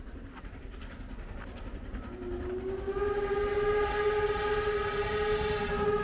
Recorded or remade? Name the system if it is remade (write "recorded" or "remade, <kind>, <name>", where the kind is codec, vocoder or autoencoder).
recorded